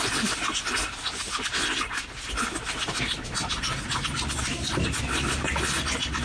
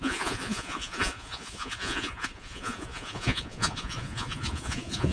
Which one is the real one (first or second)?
first